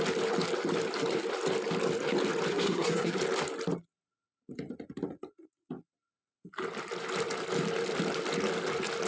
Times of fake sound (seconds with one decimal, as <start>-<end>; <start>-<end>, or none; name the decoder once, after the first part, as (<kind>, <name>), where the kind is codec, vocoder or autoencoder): 2.5-3.2 (codec, SNAC)